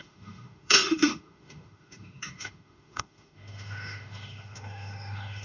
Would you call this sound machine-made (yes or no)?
yes